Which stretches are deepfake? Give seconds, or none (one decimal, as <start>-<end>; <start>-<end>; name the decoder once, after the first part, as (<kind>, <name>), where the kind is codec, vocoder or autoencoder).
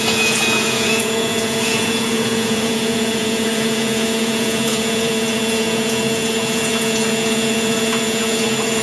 0.0-8.8 (vocoder, Vocos)